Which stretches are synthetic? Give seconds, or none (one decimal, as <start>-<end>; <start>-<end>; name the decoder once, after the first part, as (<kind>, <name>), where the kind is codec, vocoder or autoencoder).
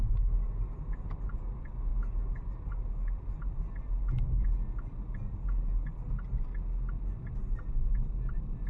none